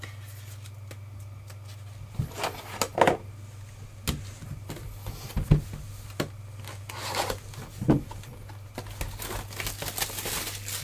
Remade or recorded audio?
recorded